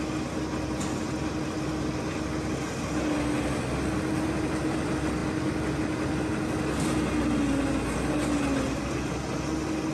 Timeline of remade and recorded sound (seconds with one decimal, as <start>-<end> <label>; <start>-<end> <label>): 0.0-9.9 recorded